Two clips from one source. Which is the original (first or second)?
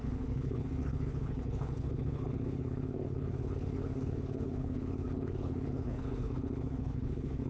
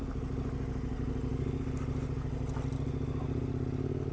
second